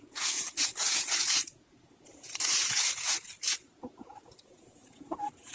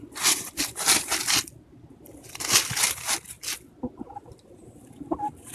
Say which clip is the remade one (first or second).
first